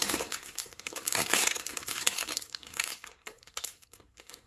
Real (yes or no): no